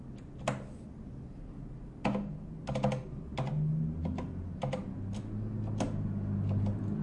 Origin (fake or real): real